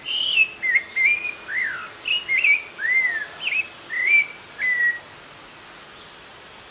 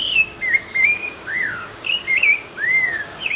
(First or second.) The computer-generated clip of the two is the second